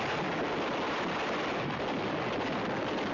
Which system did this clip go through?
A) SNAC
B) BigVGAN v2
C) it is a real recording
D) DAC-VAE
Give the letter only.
C